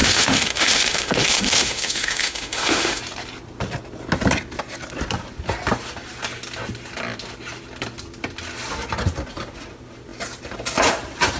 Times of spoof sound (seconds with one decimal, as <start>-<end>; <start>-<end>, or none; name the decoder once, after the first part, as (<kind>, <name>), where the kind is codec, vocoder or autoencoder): 0.0-3.0 (autoencoder, DAC-VAE)